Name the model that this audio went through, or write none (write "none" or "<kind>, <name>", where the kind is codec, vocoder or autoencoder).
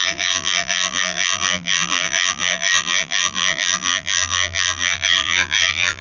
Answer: vocoder, BigVGAN v2